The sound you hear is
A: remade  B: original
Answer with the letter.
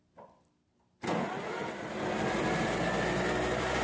B